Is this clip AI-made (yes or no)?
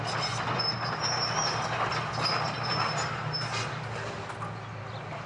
no